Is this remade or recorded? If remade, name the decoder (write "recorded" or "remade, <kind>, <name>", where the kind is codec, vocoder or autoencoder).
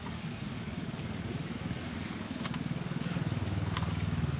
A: remade, codec, DAC